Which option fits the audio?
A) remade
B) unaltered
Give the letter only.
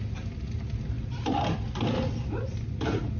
B